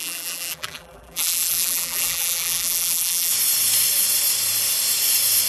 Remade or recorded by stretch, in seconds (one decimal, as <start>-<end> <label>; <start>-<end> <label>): 0.0-3.3 remade; 3.3-5.5 recorded